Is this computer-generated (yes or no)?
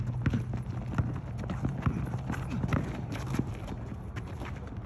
no